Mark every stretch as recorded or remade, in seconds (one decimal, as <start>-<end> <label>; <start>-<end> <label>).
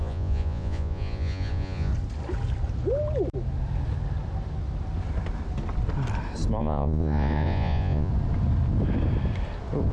0.0-1.9 remade; 1.9-6.6 recorded; 6.6-8.1 remade; 8.1-9.9 recorded